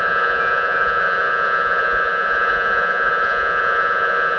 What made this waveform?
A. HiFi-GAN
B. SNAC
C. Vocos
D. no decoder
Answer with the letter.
C